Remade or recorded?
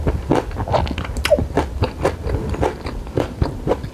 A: recorded